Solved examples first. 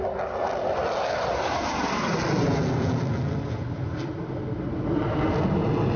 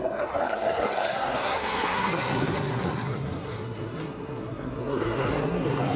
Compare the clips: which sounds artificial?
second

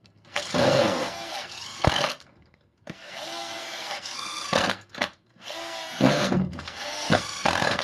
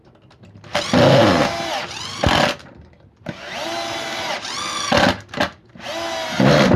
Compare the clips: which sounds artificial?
first